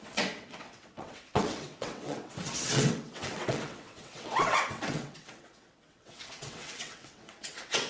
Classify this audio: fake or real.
fake